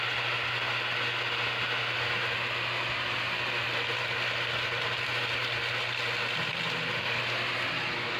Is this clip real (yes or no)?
yes